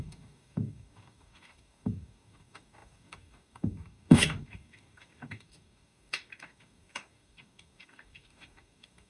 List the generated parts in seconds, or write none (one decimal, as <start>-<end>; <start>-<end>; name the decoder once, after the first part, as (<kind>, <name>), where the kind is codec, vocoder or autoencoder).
0.0-9.1 (codec, DAC)